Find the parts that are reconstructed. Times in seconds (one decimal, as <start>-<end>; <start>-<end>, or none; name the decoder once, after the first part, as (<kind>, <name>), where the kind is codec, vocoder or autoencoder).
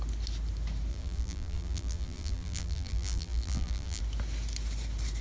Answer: 0.9-4.0 (vocoder, BigVGAN v2)